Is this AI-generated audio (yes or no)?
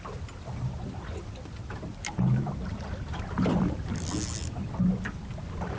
no